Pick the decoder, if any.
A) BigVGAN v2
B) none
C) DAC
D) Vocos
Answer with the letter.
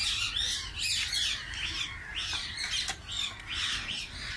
B